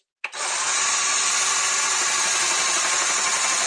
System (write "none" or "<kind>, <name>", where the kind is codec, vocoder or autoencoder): none